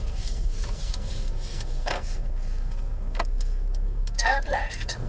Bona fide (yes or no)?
no